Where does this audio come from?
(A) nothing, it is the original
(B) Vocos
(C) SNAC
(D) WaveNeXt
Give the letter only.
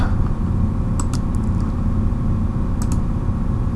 A